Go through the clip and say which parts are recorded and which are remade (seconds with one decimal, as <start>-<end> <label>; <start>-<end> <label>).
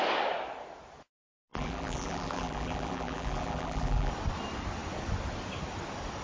0.0-1.5 recorded; 1.5-4.1 remade; 4.1-6.2 recorded